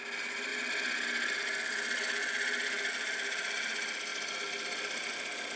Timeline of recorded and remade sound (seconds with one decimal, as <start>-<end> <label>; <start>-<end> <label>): 0.0-5.6 recorded